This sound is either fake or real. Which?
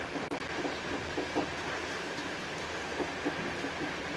real